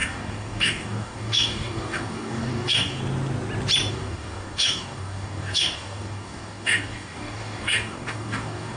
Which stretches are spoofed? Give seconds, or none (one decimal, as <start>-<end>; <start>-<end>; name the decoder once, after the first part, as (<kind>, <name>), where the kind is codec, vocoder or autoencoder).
0.0-3.0 (codec, DAC); 3.9-8.8